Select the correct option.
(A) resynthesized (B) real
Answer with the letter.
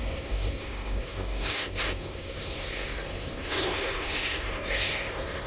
A